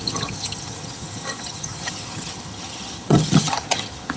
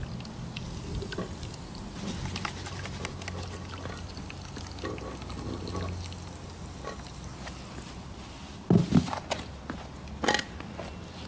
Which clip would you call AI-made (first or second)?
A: first